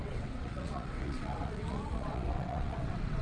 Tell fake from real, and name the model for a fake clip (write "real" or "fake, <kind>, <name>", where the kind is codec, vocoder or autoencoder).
fake, vocoder, WaveNeXt